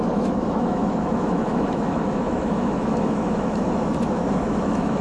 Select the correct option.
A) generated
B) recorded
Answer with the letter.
A